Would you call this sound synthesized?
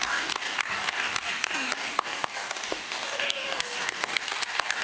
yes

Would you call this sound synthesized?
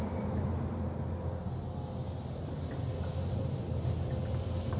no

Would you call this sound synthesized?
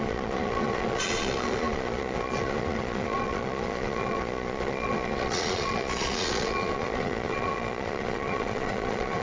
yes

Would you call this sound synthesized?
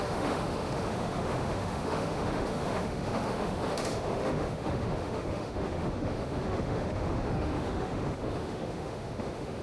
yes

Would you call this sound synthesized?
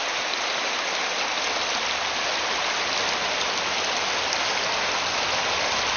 no